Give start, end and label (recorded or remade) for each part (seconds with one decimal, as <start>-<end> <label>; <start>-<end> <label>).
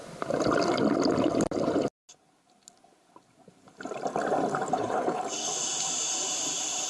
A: 0.0-4.7 recorded; 4.7-5.2 remade; 5.2-6.9 recorded